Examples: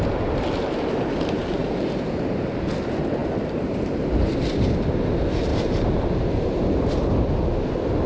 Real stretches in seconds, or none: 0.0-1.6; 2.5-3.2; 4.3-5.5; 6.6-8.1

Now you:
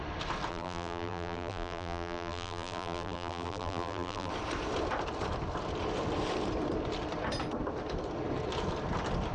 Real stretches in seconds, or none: 0.0-0.5; 4.3-9.3

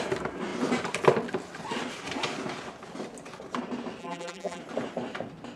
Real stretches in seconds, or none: 0.0-4.0; 4.6-5.6

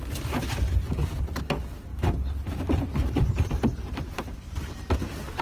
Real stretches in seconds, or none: 0.0-1.9

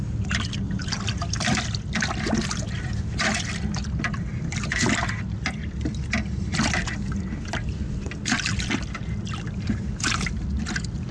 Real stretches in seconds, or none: 0.0-11.1